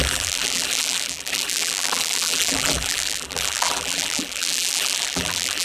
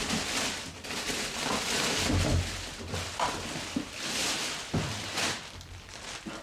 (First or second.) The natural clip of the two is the second